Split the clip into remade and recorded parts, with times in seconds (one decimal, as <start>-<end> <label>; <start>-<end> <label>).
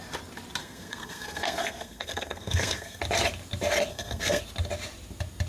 0.0-0.6 recorded; 0.6-3.0 remade; 3.0-3.9 recorded; 3.9-4.4 remade; 4.4-5.5 recorded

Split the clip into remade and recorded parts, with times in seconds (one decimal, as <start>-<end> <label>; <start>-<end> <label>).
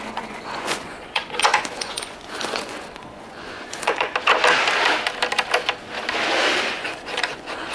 0.0-4.1 remade; 4.1-6.6 recorded; 6.6-7.7 remade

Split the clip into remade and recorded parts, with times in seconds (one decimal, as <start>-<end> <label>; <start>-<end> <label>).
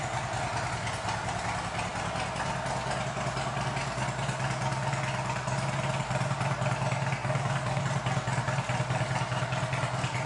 0.0-7.2 recorded; 7.2-7.8 remade; 7.8-10.3 recorded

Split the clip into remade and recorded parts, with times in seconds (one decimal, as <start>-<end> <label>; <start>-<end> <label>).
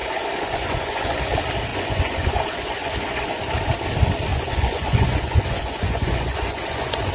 0.0-1.2 remade; 1.2-1.7 recorded; 1.7-3.4 remade; 3.4-4.3 recorded; 4.3-7.1 remade